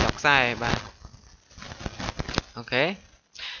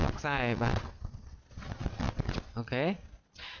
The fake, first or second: second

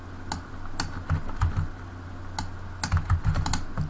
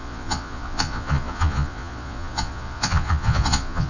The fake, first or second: second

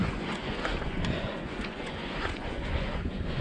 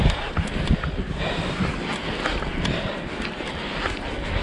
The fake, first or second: first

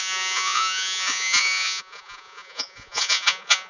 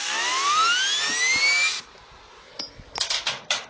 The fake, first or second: first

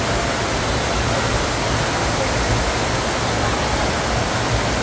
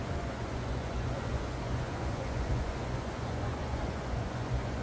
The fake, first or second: second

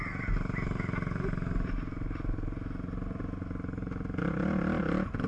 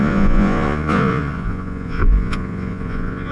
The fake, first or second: second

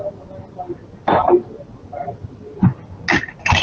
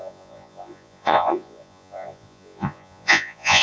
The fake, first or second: second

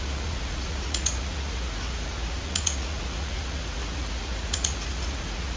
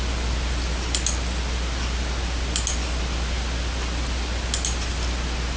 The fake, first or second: first